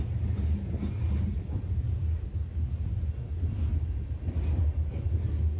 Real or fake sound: real